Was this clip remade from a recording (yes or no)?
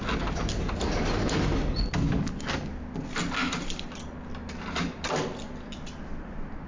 no